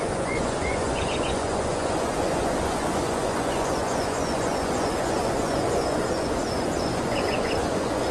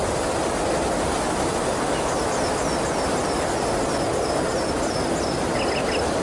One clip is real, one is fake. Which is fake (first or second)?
first